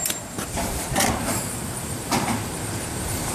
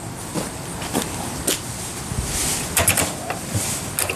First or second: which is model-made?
first